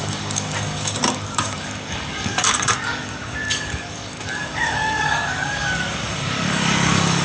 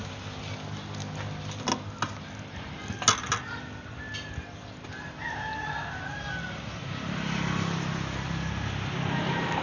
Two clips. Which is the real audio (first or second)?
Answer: second